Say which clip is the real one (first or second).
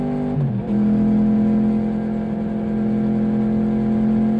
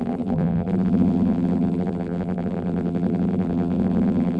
first